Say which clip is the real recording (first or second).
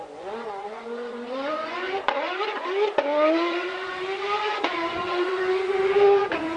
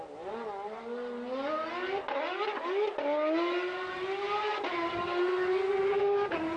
second